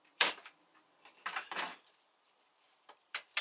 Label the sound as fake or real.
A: fake